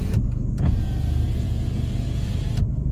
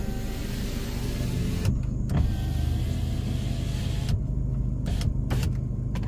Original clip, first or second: second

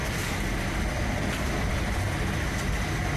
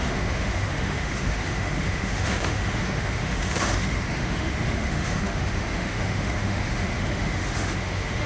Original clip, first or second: first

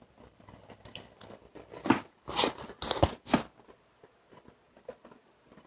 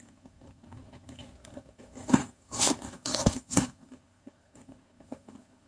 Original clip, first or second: first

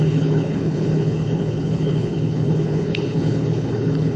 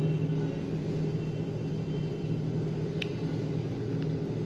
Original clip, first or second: second